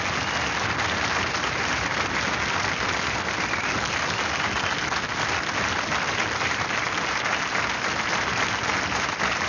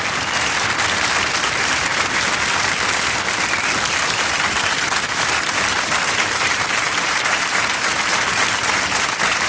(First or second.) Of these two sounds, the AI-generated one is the second